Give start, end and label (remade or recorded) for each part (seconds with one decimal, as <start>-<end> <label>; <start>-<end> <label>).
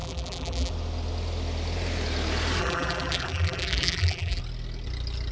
0.0-0.7 remade; 0.7-2.6 recorded; 2.6-4.4 remade; 4.4-5.3 recorded